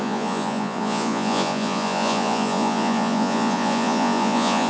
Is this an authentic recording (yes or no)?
no